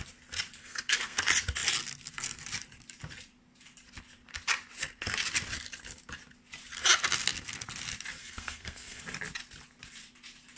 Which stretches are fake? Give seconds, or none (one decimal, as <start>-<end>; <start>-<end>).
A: 0.6-1.2; 8.2-9.0